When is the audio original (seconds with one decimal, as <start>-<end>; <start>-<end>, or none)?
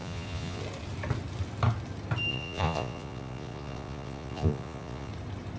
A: 0.6-2.3; 5.1-5.6